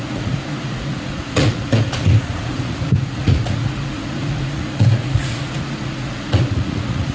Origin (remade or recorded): remade